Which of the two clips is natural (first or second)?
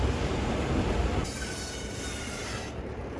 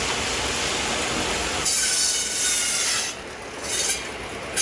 second